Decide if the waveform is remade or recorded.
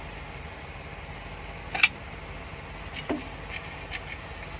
recorded